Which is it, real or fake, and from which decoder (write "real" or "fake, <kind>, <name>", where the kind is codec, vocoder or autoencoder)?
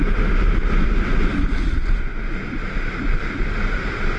real